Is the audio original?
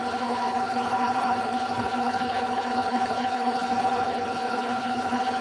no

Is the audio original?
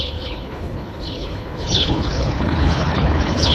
no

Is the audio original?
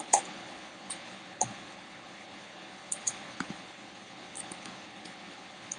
no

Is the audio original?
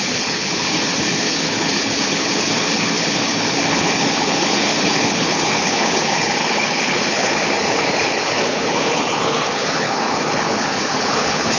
no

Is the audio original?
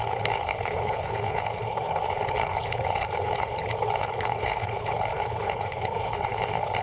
no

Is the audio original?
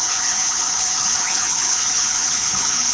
no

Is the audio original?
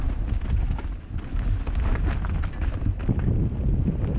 yes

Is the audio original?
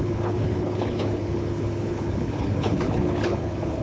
no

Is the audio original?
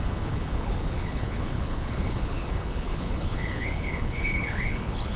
no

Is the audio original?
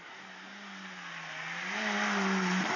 yes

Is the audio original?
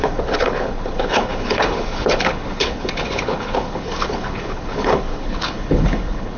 no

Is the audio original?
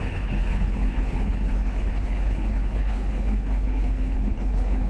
no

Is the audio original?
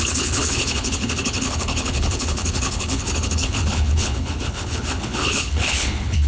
no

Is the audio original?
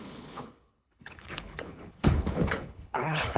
no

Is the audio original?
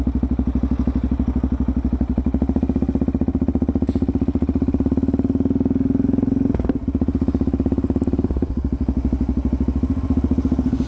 yes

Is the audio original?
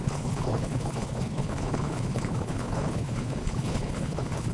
no